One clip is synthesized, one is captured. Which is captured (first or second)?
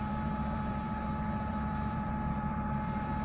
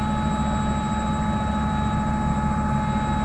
second